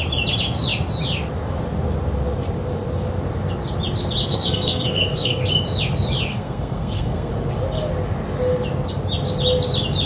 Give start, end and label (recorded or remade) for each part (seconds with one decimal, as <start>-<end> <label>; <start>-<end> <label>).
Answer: 0.0-4.3 recorded; 4.3-5.4 remade; 5.4-6.3 recorded; 6.3-7.3 remade; 7.3-10.1 recorded